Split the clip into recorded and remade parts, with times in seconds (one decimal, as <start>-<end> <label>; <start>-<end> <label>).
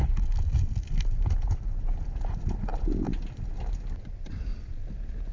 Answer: 0.0-5.3 recorded